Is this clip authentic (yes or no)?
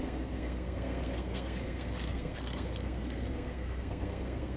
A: no